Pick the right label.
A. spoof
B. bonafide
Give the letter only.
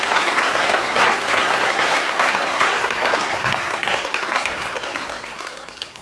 A